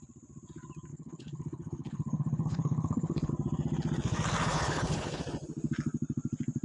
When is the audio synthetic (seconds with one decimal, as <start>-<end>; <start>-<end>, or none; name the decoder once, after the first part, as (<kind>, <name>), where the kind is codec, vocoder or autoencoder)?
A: 0.9-3.3 (codec, HILCodec); 4.5-5.2